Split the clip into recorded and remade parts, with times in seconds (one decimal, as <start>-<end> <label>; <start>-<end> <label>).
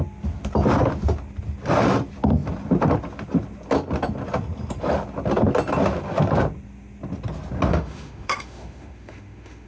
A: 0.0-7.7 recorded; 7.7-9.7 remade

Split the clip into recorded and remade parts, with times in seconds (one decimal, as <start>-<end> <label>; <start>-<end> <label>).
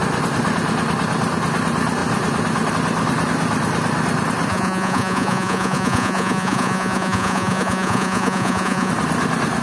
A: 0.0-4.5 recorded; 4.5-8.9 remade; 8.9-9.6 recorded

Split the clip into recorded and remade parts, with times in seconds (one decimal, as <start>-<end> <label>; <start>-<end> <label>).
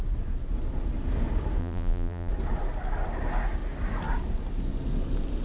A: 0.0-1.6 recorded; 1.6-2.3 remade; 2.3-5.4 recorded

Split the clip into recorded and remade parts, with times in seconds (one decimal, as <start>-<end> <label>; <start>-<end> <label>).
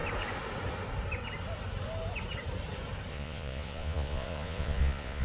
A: 0.0-3.1 recorded; 3.1-5.2 remade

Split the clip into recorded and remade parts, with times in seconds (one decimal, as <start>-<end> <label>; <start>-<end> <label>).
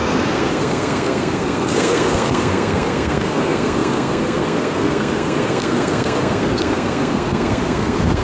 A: 0.0-8.2 remade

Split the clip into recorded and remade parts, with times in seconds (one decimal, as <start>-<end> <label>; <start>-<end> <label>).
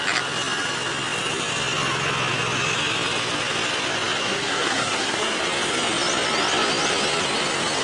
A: 0.0-4.2 recorded; 4.2-5.4 remade; 5.4-7.8 recorded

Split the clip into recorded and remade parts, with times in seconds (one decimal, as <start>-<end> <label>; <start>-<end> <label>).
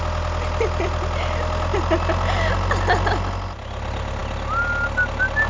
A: 0.0-5.5 recorded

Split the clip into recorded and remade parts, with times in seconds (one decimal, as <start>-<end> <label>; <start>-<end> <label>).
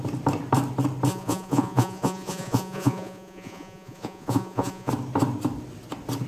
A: 0.0-1.1 recorded; 1.1-4.9 remade; 4.9-6.3 recorded